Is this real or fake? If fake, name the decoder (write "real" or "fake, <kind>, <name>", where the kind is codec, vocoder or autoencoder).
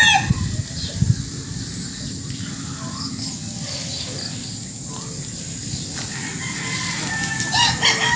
real